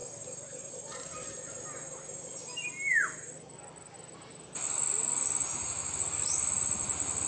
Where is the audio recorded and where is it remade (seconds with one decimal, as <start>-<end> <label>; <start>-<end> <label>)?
0.0-7.3 recorded